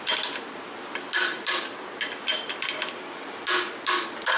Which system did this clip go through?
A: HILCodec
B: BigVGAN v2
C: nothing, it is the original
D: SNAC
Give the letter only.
C